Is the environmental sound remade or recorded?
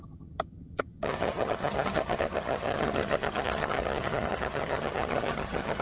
remade